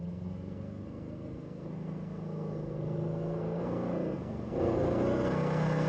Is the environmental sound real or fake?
fake